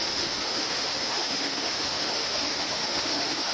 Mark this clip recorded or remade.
remade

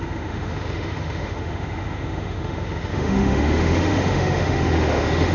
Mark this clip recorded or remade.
remade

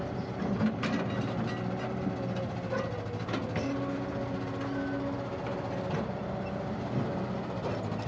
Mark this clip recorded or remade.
recorded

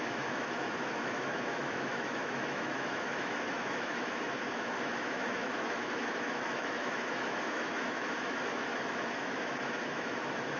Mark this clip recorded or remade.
remade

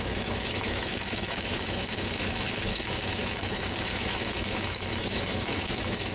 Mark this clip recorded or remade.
remade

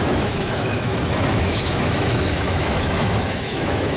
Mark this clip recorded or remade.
remade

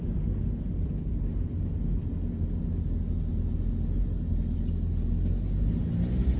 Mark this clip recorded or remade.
recorded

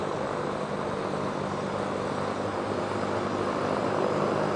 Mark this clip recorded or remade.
recorded